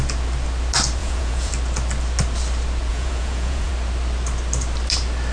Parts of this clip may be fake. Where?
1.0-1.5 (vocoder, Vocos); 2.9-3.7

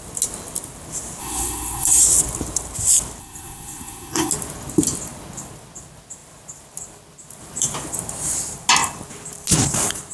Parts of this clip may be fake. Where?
1.2-2.0 (codec, SNAC); 3.2-4.3